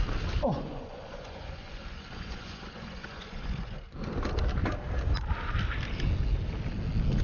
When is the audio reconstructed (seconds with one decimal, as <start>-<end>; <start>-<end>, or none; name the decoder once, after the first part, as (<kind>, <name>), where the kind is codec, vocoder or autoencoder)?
0.5-4.1 (vocoder, Vocos)